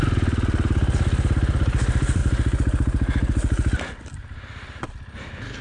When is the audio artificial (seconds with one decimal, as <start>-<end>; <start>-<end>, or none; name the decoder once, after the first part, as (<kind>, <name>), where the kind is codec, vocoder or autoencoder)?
0.0-2.2 (vocoder, BigVGAN v2); 3.9-5.6